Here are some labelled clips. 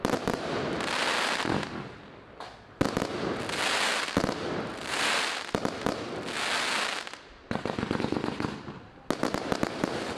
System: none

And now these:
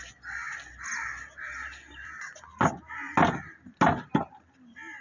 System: none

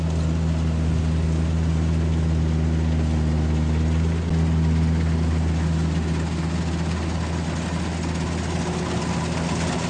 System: none